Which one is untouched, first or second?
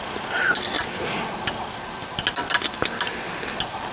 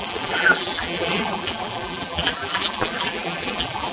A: first